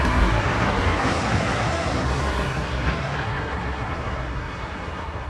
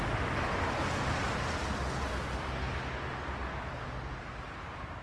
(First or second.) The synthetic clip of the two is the first